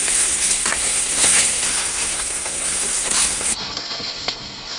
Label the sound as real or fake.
fake